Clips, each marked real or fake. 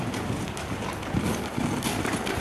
real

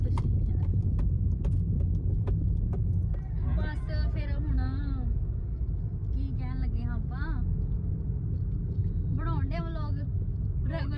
real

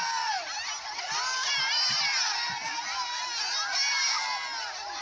real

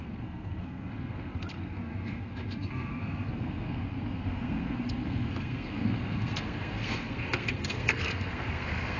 fake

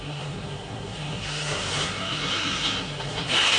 fake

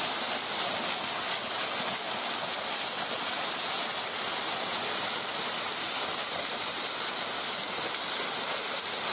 real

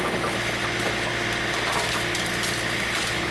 real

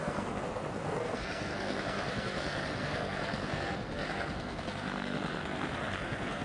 fake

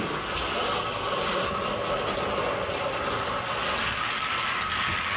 real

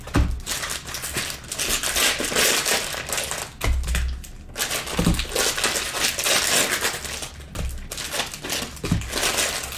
real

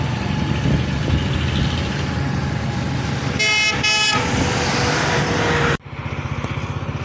real